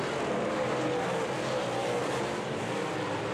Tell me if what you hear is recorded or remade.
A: recorded